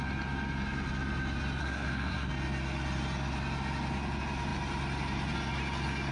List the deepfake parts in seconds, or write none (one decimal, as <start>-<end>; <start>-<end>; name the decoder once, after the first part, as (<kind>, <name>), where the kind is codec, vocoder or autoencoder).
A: 1.6-2.3 (codec, SNAC)